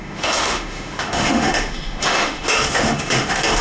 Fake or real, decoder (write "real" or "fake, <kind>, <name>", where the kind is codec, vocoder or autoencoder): fake, autoencoder, DAC-VAE